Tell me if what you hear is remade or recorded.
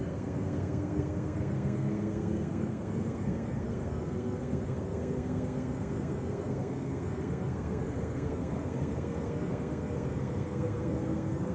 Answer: remade